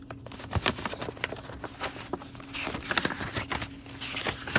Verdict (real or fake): real